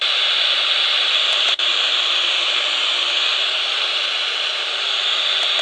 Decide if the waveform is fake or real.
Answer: real